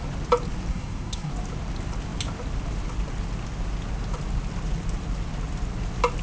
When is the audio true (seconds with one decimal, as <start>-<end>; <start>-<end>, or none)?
0.0-0.7; 1.3-6.2